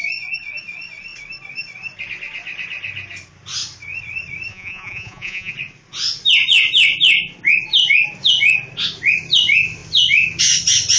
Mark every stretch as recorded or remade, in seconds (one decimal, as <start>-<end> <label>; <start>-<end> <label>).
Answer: 0.0-4.5 recorded; 4.5-5.5 remade; 5.5-11.0 recorded

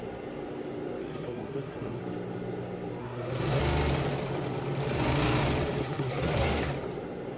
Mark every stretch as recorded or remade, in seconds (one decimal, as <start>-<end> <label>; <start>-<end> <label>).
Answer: 0.0-1.0 recorded; 1.0-2.0 remade; 2.0-3.0 recorded; 3.0-3.6 remade; 3.6-5.8 recorded; 5.8-6.7 remade; 6.7-7.4 recorded

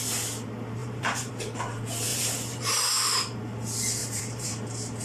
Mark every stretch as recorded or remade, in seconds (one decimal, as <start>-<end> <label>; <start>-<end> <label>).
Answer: 0.0-0.8 recorded; 0.8-1.3 remade; 1.3-2.1 recorded; 2.1-3.4 remade; 3.4-4.0 recorded; 4.0-4.5 remade; 4.5-5.0 recorded

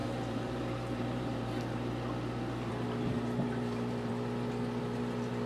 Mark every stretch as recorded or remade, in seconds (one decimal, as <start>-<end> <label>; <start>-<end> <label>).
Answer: 0.0-1.9 remade; 1.9-2.7 recorded; 2.7-4.1 remade; 4.1-5.5 recorded

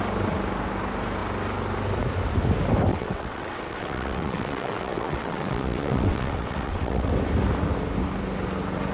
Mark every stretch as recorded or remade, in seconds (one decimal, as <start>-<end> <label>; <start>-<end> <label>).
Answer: 0.0-2.9 recorded; 2.9-7.1 remade; 7.1-8.9 recorded

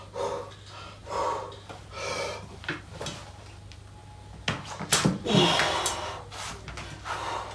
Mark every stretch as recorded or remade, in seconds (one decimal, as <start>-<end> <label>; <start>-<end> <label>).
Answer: 0.0-7.5 recorded

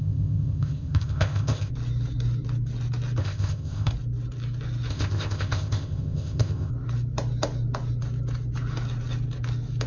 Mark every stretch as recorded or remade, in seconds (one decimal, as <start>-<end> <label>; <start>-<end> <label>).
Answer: 0.0-1.7 remade; 1.7-3.2 recorded; 3.2-3.9 remade; 3.9-4.9 recorded; 4.9-6.7 remade; 6.7-9.9 recorded